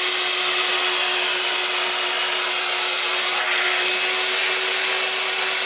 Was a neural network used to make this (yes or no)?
no